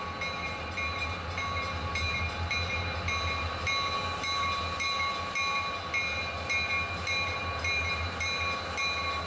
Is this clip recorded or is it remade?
recorded